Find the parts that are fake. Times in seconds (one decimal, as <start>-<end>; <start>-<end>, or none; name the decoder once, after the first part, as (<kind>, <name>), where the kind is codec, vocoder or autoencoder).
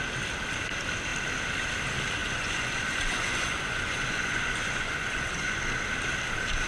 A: 2.2-5.6 (vocoder, Vocos)